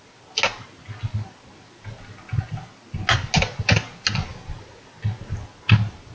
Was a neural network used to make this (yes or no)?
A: no